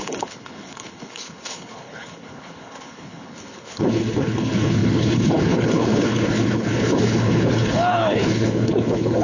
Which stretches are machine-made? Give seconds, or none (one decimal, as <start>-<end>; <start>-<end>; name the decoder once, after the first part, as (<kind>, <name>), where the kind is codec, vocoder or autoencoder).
0.0-9.2 (codec, HILCodec)